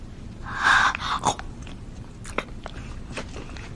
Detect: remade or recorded recorded